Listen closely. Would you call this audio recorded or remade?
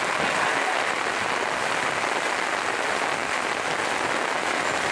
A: recorded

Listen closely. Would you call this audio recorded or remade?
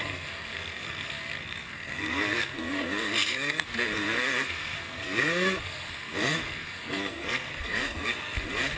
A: remade